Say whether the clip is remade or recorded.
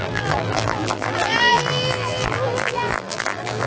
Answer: remade